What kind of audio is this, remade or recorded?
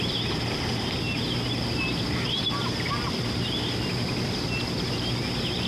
recorded